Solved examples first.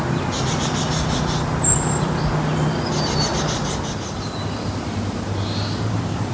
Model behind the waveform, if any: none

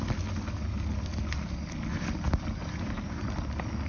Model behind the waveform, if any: none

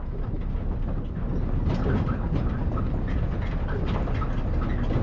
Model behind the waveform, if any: none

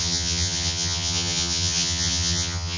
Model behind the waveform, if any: vocoder, HiFi-GAN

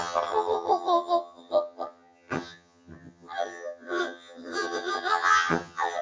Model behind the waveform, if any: vocoder, HiFi-GAN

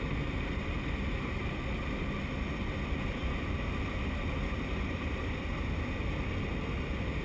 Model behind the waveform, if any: none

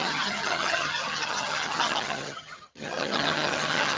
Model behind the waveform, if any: vocoder, HiFi-GAN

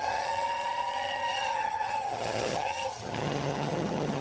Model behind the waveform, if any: vocoder, HiFi-GAN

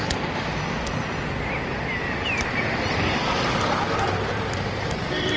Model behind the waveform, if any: none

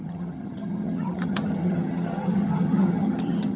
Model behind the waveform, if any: vocoder, HiFi-GAN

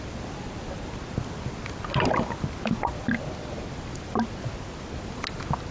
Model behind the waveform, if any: none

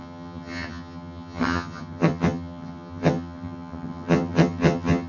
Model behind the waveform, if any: vocoder, HiFi-GAN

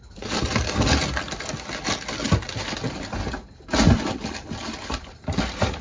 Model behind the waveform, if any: none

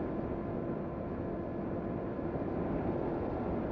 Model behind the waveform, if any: none